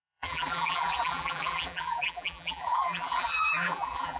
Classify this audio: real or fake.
fake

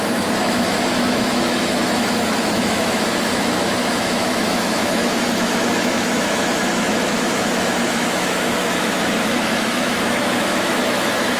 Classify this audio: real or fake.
fake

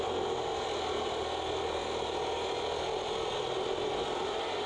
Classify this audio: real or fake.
real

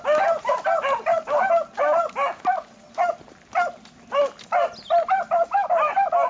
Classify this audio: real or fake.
real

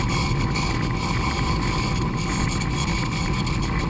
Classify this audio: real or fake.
real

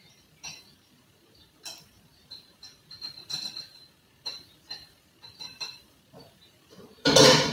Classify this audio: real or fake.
fake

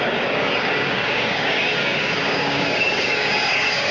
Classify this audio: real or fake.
fake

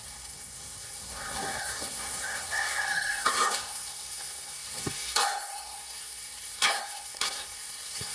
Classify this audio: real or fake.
fake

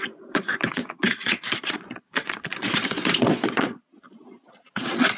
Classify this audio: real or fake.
fake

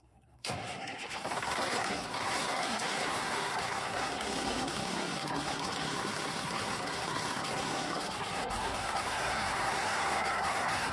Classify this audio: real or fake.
fake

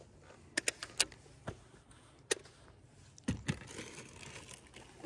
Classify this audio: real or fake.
real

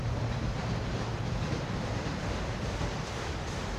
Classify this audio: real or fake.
fake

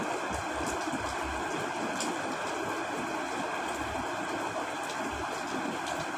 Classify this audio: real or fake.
fake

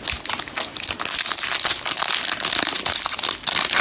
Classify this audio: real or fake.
real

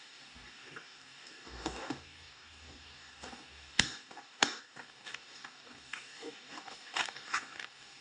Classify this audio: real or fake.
fake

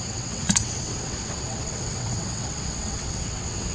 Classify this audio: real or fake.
fake